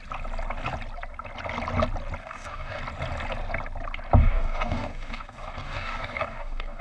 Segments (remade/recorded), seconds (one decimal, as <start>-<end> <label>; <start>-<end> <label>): 0.0-2.2 recorded; 2.2-2.8 remade; 2.8-4.2 recorded; 4.2-6.8 remade